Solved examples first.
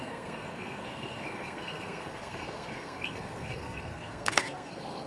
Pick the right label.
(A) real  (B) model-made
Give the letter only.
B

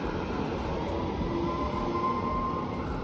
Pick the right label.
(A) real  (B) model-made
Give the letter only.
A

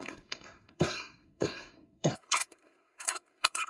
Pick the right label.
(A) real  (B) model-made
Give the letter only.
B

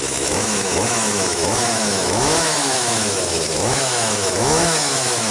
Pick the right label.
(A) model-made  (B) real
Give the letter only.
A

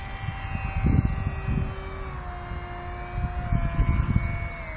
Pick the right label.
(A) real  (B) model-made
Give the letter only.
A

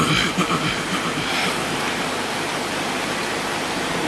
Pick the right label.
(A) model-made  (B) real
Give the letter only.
B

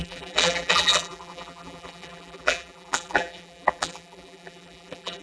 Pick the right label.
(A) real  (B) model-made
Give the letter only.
B